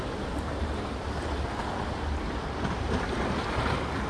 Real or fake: real